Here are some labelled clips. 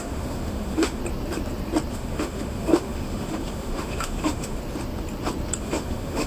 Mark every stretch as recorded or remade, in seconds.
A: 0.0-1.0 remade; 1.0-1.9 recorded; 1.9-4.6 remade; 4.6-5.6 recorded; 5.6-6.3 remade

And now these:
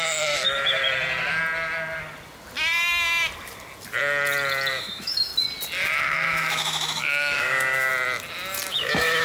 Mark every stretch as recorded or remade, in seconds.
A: 0.0-0.8 remade; 0.8-4.7 recorded; 4.7-5.3 remade; 5.3-6.0 recorded; 6.0-7.9 remade; 7.9-8.7 recorded; 8.7-9.2 remade